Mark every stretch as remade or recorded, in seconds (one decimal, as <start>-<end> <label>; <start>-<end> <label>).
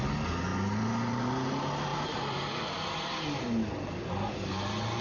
0.0-1.9 recorded; 1.9-3.1 remade; 3.1-5.0 recorded